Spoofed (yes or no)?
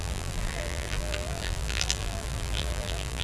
yes